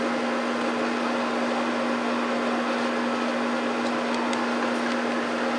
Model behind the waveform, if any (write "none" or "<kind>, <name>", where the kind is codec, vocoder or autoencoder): none